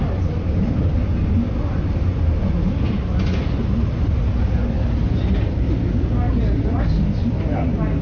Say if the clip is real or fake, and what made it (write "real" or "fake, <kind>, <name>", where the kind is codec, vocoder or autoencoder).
real